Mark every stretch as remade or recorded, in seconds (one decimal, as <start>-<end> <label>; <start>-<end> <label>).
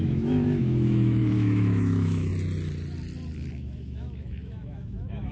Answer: 0.0-2.3 remade; 2.3-3.5 recorded; 3.5-5.3 remade